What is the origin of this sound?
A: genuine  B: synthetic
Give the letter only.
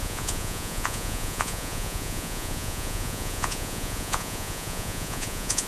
B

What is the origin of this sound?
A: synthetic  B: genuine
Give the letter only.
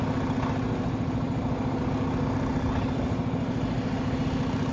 B